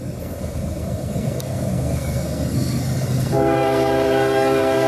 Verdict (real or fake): fake